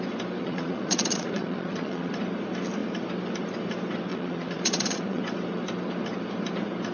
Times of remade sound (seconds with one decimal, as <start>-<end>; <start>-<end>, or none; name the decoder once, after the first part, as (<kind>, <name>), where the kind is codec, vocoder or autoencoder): 0.4-2.1 (vocoder, Vocos); 4.1-5.2